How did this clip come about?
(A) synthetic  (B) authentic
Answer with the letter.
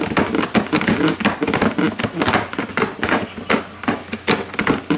B